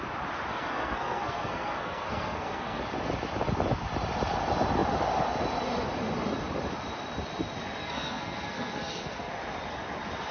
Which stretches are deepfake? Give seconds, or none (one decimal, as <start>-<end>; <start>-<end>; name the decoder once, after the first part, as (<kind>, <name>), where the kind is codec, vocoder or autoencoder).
0.5-2.8 (codec, SNAC); 7.8-9.3